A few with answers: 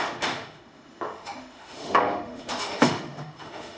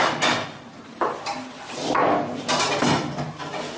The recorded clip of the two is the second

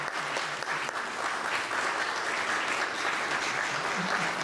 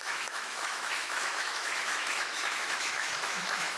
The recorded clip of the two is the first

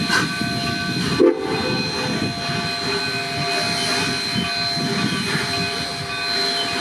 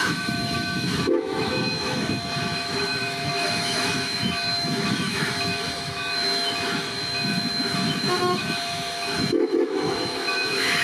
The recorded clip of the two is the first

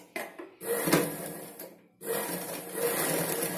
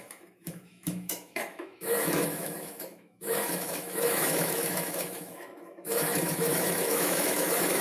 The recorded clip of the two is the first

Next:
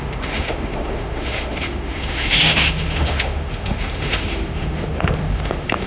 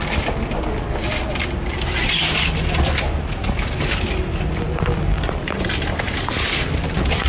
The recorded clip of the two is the second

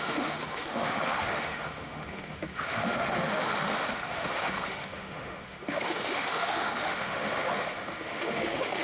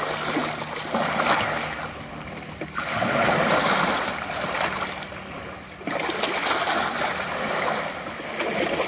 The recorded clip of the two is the second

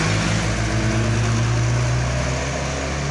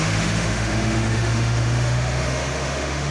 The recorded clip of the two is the first